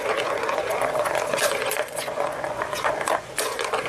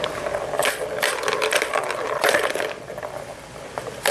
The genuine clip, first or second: second